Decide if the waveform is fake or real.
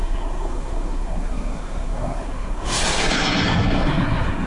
fake